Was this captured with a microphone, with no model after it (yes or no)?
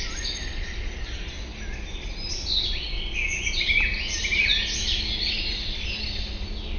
yes